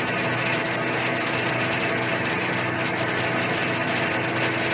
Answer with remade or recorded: recorded